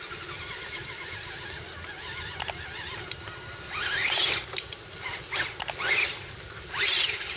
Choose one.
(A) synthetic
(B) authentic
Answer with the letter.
B